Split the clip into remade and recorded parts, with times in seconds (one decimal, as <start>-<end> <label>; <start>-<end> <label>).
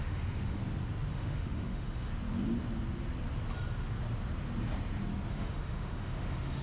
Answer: 0.0-0.6 remade; 0.6-1.1 recorded; 1.1-2.1 remade; 2.1-5.3 recorded; 5.3-6.6 remade